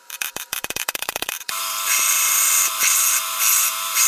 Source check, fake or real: fake